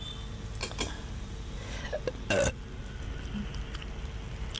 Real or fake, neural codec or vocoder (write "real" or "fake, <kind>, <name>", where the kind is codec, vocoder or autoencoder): real